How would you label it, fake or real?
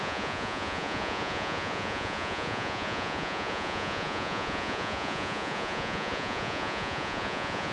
fake